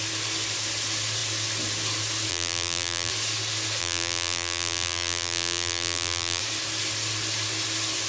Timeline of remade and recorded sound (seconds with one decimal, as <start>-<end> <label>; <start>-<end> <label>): 0.0-2.3 recorded; 2.3-3.1 remade; 3.1-3.8 recorded; 3.8-6.4 remade; 6.4-8.1 recorded